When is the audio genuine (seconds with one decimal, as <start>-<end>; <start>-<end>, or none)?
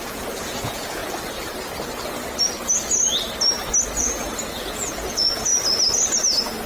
1.0-4.0; 5.5-6.7